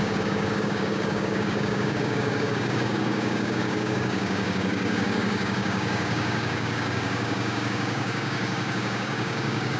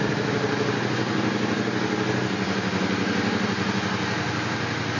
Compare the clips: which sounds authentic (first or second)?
second